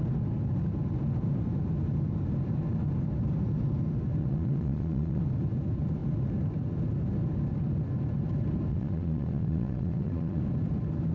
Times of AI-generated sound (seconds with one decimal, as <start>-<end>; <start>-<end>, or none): 4.2-5.2; 8.7-10.4